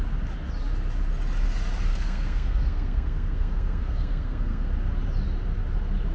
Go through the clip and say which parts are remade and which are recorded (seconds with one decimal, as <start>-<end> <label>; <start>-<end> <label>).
0.0-1.9 recorded; 1.9-4.7 remade; 4.7-6.1 recorded